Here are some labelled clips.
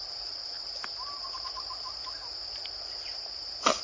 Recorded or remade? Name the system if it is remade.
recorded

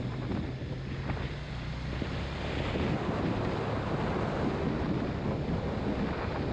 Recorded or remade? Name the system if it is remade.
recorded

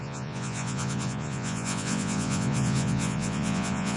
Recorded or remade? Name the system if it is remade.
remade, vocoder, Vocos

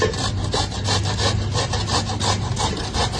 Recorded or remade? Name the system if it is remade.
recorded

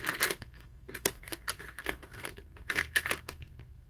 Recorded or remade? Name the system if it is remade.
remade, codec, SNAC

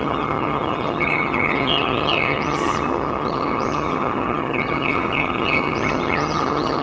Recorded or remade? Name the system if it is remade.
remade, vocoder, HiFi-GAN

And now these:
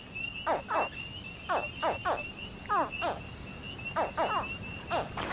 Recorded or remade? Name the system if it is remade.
recorded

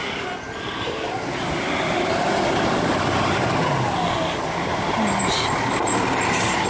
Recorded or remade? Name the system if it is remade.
recorded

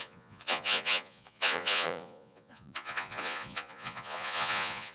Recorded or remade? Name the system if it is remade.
remade, vocoder, Vocos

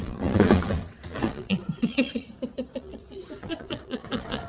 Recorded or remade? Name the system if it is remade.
remade, vocoder, WaveNeXt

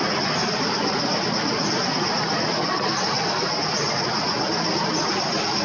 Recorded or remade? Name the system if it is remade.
recorded